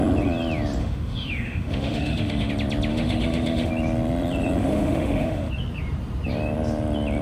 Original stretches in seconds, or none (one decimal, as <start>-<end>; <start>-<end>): 0.0-0.8; 2.5-2.9; 3.7-4.6; 5.5-7.2